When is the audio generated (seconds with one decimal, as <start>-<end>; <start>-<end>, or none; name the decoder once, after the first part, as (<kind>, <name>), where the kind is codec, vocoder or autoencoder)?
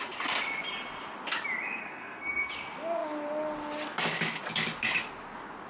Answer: 1.8-2.5 (codec, SNAC)